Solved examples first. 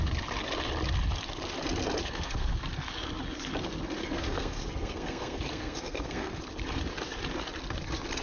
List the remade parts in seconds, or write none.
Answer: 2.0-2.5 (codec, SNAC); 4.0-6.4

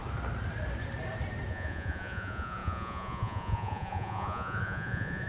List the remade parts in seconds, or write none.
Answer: 1.5-5.3 (vocoder, Vocos)

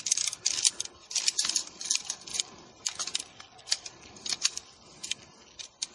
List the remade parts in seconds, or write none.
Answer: none

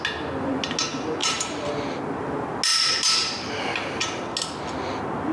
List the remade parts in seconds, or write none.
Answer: 1.2-1.8 (vocoder, BigVGAN v2)

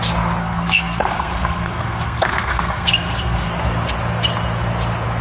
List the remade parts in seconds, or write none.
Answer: 0.4-3.5 (codec, SNAC)

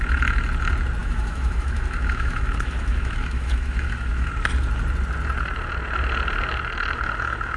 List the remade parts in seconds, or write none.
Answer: 1.0-4.3 (autoencoder, DAC-VAE)

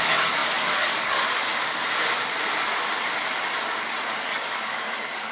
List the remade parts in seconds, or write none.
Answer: 0.0-1.5 (codec, DAC); 4.1-5.3